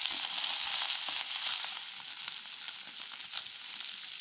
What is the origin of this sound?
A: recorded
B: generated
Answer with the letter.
A